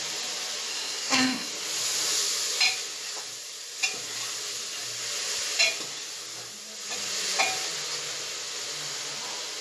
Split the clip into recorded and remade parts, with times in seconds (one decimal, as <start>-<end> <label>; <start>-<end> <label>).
0.0-0.7 recorded; 0.7-1.5 remade; 1.5-9.6 recorded